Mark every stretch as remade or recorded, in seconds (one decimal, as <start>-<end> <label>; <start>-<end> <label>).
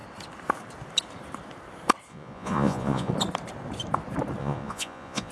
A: 0.0-2.1 recorded; 2.1-3.1 remade; 3.1-4.4 recorded; 4.4-5.3 remade